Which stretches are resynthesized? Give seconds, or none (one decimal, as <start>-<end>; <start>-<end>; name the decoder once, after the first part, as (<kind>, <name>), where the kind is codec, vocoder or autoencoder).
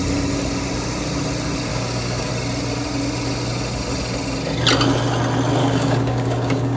1.7-2.3 (codec, DAC); 5.6-6.8